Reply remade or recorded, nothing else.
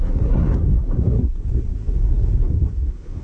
remade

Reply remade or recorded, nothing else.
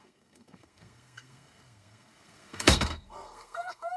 remade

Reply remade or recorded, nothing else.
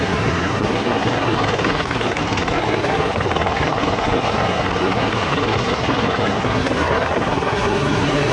remade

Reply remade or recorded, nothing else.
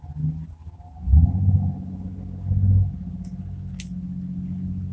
recorded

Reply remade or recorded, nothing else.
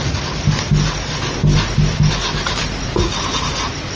recorded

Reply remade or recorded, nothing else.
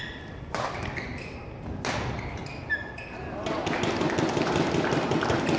recorded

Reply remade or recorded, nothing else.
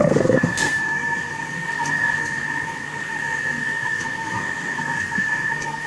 remade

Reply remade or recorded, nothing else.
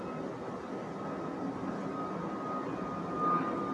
recorded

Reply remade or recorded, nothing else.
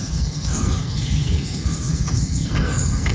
remade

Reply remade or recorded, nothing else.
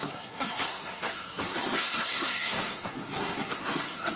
remade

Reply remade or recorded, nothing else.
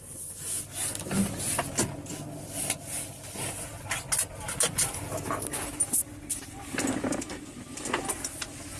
recorded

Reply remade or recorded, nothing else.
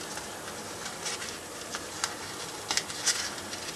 recorded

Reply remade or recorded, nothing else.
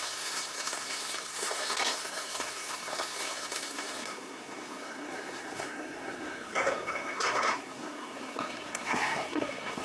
remade